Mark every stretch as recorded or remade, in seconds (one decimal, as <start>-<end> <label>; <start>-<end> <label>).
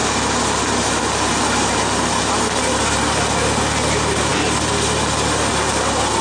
0.0-6.2 recorded